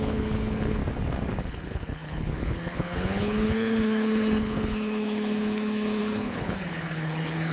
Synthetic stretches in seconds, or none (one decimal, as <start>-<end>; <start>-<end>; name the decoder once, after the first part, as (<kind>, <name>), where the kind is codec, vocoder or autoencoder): 0.0-0.8 (codec, HILCodec); 1.4-7.5